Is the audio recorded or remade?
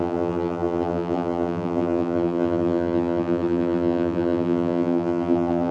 remade